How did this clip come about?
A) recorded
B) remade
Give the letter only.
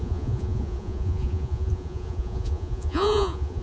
B